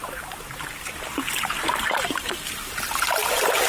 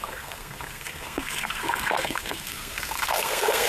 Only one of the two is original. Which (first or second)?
first